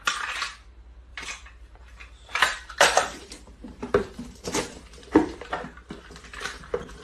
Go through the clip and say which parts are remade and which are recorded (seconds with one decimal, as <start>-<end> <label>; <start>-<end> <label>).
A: 0.0-1.1 recorded; 1.1-4.8 remade; 4.8-7.0 recorded